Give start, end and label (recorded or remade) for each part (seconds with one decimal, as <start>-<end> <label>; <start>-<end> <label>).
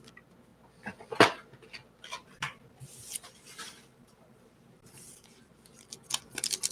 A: 0.0-2.2 recorded; 2.2-5.5 remade; 5.5-6.7 recorded